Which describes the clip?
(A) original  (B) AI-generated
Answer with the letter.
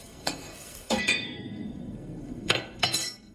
B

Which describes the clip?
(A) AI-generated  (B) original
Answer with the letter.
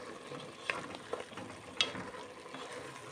B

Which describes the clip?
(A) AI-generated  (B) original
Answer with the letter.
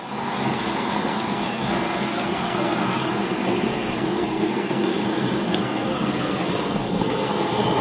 A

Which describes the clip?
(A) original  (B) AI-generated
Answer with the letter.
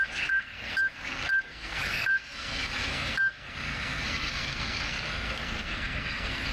B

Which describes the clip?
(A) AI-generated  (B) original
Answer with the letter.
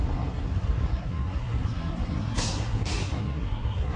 A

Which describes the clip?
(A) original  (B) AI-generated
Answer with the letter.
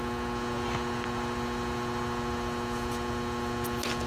A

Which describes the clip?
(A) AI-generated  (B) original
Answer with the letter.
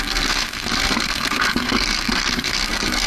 A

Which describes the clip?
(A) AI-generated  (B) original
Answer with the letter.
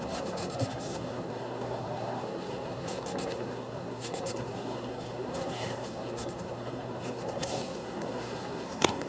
A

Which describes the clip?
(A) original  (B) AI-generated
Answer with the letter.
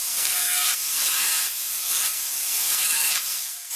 B